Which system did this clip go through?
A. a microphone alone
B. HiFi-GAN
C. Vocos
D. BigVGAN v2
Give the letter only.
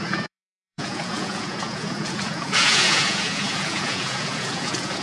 C